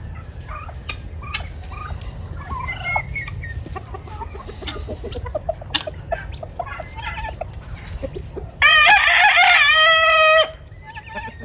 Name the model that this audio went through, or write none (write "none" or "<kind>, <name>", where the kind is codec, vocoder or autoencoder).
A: none